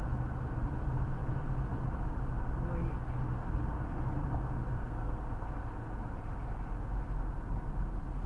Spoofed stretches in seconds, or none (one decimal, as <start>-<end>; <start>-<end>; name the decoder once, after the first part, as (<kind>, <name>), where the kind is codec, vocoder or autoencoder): 4.8-5.3 (codec, SNAC)